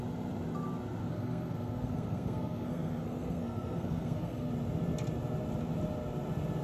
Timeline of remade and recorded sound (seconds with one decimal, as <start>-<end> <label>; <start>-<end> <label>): 0.0-1.0 recorded; 1.0-4.5 remade; 4.5-6.6 recorded